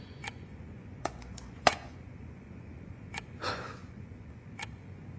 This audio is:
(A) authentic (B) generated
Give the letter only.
B